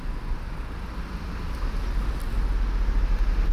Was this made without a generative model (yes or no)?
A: yes